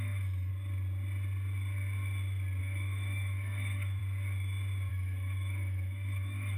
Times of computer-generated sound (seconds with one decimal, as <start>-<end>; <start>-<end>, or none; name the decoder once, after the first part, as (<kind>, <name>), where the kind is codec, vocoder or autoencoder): 0.0-0.5 (autoencoder, DAC-VAE); 2.6-4.0; 4.9-6.6